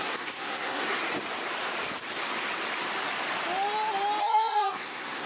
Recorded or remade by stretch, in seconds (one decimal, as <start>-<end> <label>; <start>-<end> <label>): 0.0-1.0 remade; 1.0-4.2 recorded; 4.2-5.3 remade